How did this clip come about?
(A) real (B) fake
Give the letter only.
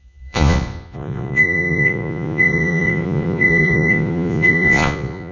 B